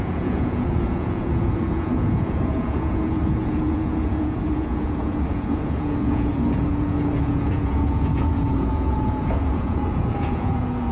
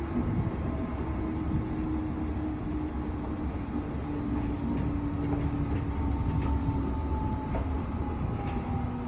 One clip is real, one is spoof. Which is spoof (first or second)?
first